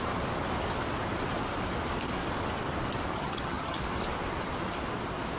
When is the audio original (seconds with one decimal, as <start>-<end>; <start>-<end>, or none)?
0.0-3.1; 3.8-5.4